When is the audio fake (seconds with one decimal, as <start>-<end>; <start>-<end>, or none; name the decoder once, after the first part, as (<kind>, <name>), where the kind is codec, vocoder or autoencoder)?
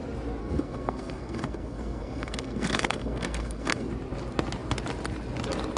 0.4-3.9 (codec, SNAC)